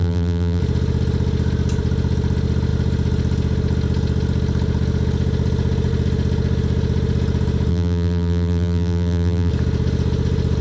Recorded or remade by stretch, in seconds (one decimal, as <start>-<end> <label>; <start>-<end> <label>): 0.0-0.6 remade; 0.6-7.7 recorded; 7.7-9.5 remade; 9.5-10.6 recorded